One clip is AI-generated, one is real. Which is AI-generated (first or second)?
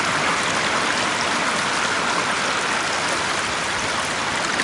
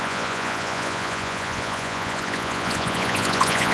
second